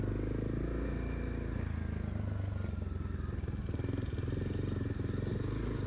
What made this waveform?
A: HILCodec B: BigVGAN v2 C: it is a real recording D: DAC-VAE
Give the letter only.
C